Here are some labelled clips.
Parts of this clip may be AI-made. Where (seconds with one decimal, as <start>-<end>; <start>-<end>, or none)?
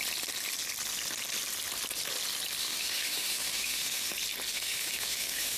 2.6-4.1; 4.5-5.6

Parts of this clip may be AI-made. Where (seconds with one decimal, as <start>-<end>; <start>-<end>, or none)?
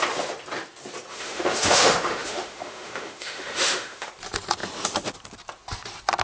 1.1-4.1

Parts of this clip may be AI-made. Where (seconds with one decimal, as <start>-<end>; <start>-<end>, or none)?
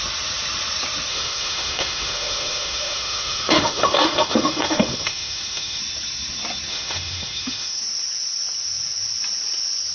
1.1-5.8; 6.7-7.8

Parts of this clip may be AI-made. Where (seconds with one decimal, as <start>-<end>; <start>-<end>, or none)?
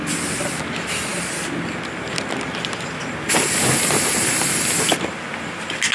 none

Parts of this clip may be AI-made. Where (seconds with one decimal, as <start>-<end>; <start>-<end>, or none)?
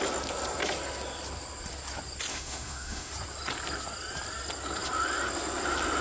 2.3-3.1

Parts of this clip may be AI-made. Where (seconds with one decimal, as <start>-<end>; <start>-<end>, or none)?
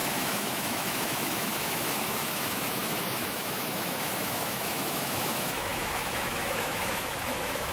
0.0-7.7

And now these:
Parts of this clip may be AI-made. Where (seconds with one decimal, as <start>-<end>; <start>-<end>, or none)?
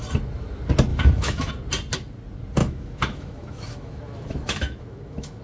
0.9-1.5; 2.6-5.4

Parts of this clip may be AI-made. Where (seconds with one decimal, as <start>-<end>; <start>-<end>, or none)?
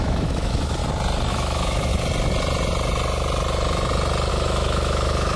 0.0-0.8; 1.3-1.9; 4.3-5.4